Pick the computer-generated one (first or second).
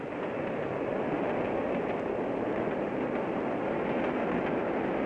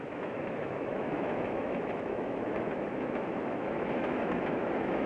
second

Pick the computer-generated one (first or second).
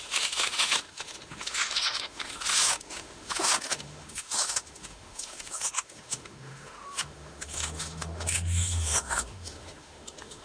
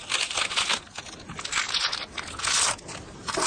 first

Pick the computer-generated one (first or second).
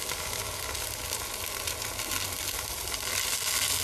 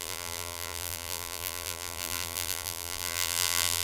second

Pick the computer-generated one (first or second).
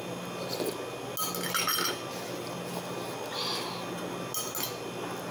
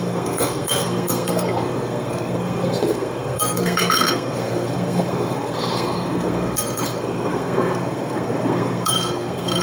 second